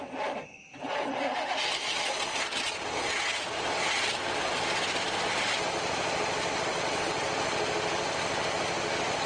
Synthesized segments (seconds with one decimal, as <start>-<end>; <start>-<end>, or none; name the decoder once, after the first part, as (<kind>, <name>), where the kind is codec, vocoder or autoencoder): 6.7-7.3 (vocoder, WaveNeXt)

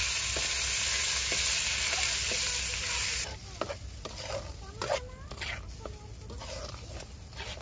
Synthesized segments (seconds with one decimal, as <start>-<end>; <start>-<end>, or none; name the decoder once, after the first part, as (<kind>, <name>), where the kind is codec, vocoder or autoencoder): none

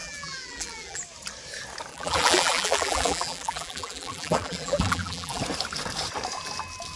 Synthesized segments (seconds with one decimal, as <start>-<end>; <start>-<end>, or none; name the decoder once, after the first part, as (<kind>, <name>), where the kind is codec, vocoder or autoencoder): 0.0-1.0 (vocoder, BigVGAN v2); 1.9-5.4